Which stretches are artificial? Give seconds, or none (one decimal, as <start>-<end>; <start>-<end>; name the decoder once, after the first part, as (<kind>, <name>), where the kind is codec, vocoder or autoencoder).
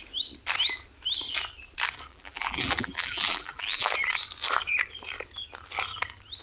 2.1-3.9 (vocoder, BigVGAN v2)